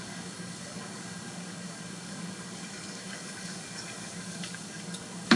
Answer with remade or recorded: remade